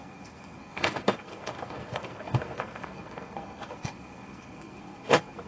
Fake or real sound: fake